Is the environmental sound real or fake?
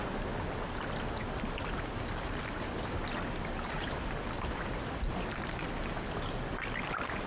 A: real